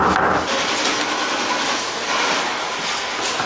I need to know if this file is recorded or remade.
recorded